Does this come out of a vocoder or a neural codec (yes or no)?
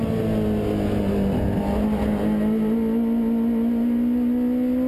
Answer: no